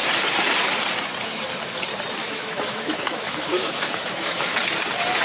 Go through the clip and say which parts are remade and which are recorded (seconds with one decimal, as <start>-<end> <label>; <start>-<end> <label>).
0.0-2.2 recorded; 2.2-4.6 remade; 4.6-5.2 recorded